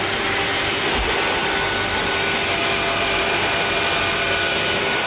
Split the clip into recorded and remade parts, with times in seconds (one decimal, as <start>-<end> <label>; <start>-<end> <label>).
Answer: 0.0-5.1 recorded